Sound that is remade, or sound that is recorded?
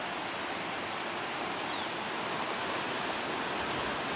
recorded